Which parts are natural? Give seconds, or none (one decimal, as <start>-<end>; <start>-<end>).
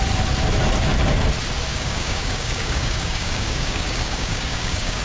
0.0-1.7